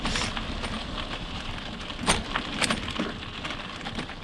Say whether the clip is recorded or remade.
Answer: recorded